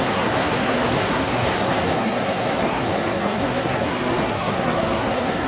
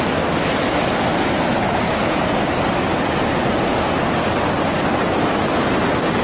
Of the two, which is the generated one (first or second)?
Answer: first